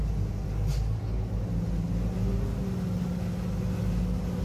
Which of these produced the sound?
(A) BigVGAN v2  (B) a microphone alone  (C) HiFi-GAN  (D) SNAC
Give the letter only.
B